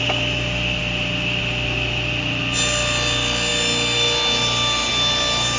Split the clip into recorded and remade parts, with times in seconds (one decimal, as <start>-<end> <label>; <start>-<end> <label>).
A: 0.0-5.6 recorded